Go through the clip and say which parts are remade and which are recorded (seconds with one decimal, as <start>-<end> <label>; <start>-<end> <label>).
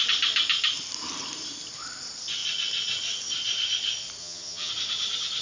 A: 0.0-4.2 recorded; 4.2-4.7 remade; 4.7-5.4 recorded